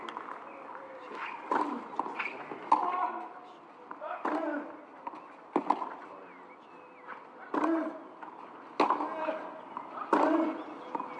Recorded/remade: recorded